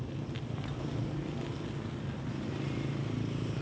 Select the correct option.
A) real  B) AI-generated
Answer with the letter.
A